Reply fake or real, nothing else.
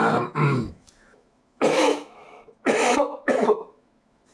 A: fake